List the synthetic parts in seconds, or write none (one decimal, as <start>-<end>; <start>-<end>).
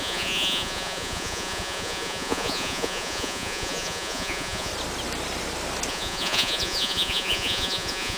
0.0-4.7; 5.9-8.2